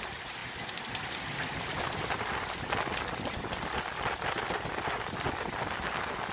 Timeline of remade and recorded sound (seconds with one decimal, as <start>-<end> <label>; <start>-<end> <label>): 0.0-6.3 recorded